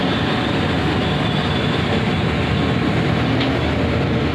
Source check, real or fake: real